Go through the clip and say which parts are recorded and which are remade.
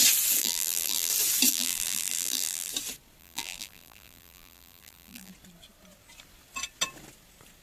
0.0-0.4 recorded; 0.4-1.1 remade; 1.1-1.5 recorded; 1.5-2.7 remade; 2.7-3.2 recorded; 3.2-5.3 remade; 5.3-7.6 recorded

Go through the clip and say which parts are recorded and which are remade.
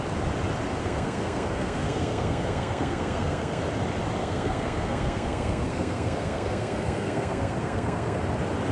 0.0-0.8 recorded; 0.8-3.6 remade; 3.6-4.2 recorded; 4.2-8.2 remade; 8.2-8.7 recorded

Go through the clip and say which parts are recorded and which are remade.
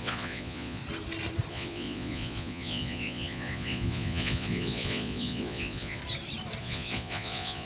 0.0-0.8 remade; 0.8-1.5 recorded; 1.5-6.0 remade; 6.0-6.6 recorded; 6.6-7.7 remade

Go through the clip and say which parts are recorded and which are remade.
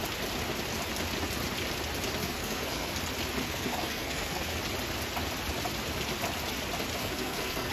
0.0-2.2 recorded; 2.2-3.0 remade; 3.0-3.4 recorded; 3.4-4.6 remade; 4.6-7.0 recorded; 7.0-7.7 remade